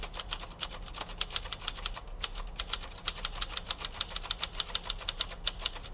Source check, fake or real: real